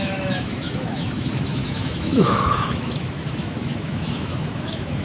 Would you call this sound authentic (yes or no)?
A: no